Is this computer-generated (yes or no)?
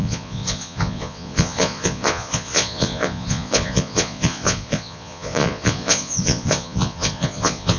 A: yes